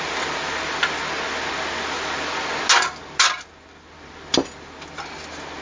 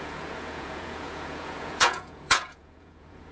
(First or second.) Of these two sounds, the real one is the first